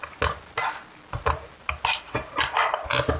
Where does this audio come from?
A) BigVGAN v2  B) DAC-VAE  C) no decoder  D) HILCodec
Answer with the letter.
C